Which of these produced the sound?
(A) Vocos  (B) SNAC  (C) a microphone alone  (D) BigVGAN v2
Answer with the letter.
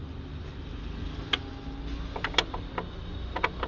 C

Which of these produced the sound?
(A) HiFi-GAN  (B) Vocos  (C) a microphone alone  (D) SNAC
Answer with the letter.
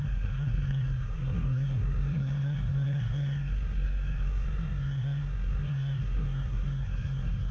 D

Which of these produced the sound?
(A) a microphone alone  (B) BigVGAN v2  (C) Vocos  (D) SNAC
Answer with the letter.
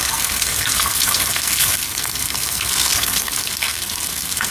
D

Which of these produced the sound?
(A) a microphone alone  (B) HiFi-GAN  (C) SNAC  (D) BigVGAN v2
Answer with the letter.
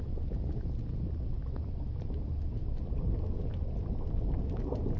A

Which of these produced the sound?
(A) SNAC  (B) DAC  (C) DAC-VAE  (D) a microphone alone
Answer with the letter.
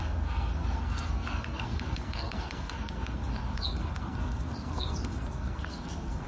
A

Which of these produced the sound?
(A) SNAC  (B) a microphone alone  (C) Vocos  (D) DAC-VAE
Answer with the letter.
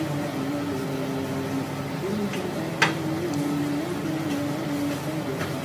B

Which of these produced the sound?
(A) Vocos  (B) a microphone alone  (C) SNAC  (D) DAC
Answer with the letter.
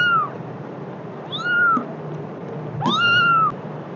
B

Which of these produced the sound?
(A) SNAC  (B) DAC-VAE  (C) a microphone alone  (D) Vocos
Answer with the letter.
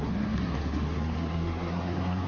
A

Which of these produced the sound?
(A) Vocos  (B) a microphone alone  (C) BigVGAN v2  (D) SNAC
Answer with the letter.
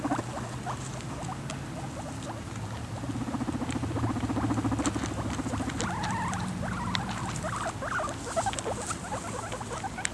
B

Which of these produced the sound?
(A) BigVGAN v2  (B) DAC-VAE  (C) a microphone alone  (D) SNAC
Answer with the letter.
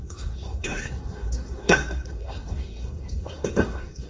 D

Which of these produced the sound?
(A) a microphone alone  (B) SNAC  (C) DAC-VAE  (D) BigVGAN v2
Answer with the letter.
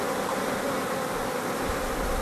A